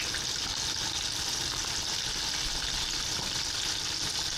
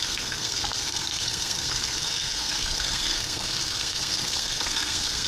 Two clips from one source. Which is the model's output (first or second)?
second